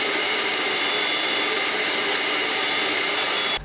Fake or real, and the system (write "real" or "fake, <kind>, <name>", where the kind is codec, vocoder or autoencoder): real